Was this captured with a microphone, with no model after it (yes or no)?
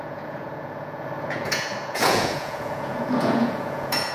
no